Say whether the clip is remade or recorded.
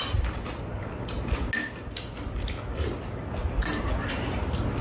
recorded